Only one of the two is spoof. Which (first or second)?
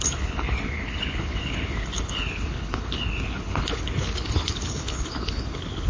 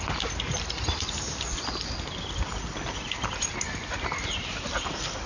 first